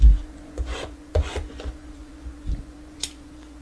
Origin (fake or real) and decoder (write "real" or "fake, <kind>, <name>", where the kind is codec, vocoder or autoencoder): fake, vocoder, Vocos